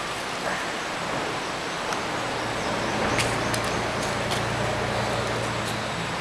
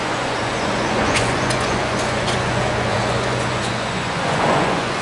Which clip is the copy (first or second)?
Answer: second